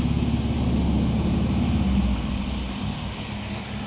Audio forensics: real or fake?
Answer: real